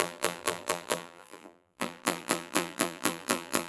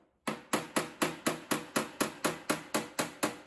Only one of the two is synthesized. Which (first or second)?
first